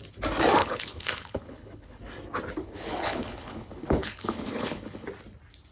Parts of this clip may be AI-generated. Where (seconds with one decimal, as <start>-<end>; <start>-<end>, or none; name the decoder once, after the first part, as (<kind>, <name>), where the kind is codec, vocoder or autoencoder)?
0.6-2.0 (codec, HILCodec); 2.6-5.1